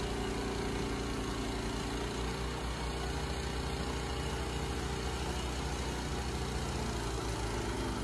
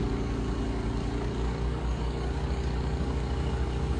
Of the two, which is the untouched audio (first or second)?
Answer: first